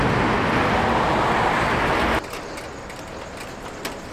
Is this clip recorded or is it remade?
recorded